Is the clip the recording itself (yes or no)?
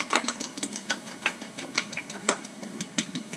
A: no